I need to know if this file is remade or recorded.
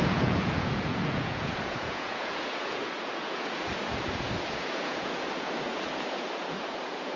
remade